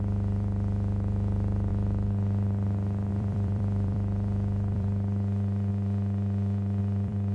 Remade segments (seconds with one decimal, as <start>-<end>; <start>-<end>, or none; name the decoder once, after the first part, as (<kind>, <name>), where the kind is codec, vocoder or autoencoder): 0.0-1.7 (vocoder, BigVGAN v2); 3.1-5.7; 6.8-7.3